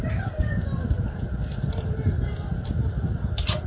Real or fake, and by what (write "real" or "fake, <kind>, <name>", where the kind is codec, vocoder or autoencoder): real